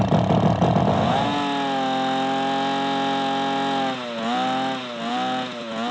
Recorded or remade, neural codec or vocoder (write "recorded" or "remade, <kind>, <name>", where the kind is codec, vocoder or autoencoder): recorded